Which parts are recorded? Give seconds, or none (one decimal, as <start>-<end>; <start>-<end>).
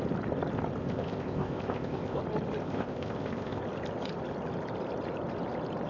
0.0-0.8; 2.2-2.6; 3.6-5.9